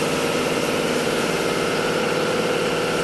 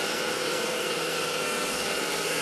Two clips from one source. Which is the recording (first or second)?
first